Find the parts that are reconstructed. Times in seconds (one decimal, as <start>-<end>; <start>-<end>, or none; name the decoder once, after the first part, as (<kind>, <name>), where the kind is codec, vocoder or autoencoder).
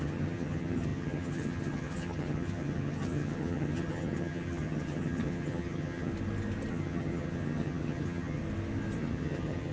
0.0-6.1 (vocoder, HiFi-GAN); 6.7-8.4; 9.0-9.7